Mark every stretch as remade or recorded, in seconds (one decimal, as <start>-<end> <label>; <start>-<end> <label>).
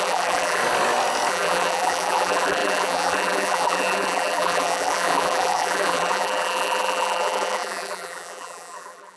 0.0-0.6 remade; 0.6-1.3 recorded; 1.3-9.2 remade